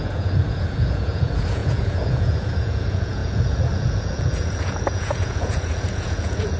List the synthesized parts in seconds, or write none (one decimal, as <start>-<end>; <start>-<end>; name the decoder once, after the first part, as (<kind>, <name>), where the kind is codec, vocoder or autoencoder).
0.0-6.6 (vocoder, Vocos)